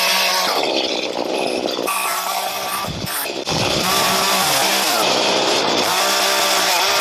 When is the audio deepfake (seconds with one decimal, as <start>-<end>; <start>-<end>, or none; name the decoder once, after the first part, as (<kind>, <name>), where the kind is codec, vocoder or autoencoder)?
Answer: 2.1-2.8 (vocoder, BigVGAN v2); 4.7-6.0